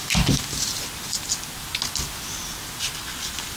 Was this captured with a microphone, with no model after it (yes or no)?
yes